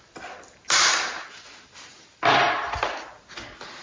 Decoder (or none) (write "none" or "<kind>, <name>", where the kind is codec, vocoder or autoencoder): none